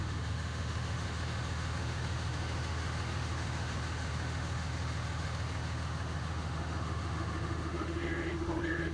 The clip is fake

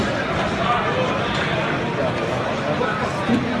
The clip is real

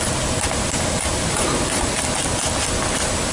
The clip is real